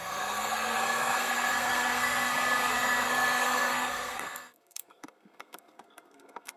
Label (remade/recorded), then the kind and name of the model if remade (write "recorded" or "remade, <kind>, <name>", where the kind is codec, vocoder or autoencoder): remade, codec, SNAC